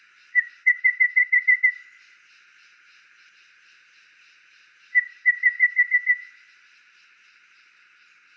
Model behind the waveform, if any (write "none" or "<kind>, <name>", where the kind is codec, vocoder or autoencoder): none